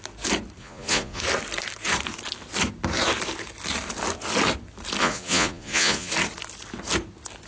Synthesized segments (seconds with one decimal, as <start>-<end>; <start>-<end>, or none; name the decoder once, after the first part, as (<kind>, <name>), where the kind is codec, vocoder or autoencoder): 0.6-1.2 (vocoder, Vocos); 5.0-6.1